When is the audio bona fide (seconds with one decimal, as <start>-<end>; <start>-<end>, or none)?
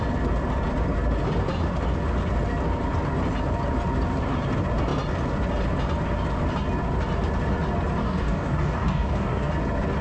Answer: 0.0-8.0; 9.5-10.0